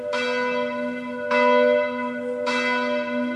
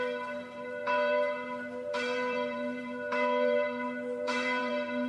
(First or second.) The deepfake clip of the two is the second